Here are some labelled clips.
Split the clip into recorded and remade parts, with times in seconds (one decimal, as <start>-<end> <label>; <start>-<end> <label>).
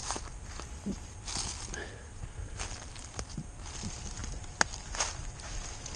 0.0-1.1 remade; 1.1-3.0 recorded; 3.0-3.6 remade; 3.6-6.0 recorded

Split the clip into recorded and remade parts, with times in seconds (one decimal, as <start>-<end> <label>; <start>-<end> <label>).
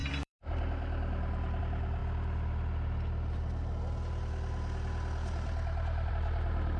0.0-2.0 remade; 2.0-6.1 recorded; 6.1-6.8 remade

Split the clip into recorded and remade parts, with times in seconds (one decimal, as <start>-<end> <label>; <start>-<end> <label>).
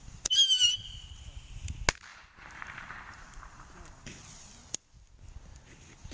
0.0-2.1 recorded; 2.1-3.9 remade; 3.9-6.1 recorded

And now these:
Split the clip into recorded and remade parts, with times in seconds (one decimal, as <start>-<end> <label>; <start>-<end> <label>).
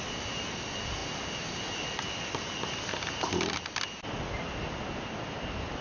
0.0-5.8 recorded